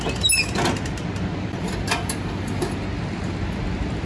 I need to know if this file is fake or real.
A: real